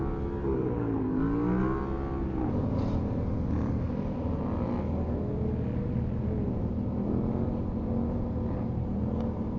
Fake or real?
real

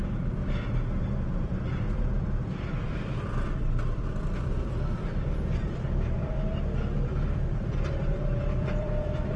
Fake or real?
fake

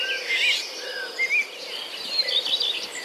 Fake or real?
real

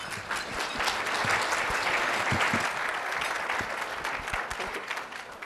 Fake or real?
real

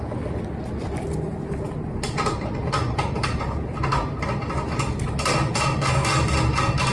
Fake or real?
real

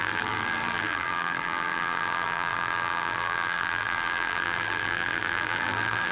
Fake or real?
fake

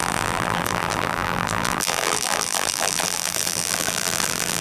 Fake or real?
fake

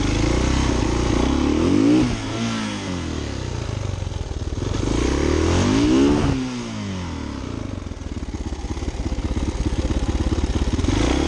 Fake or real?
real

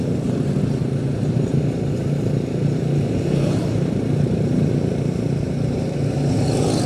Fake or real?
fake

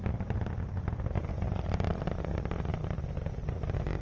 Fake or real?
fake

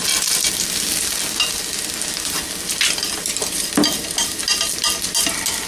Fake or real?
real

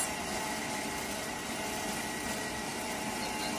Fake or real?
fake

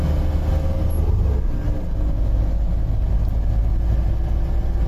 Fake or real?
real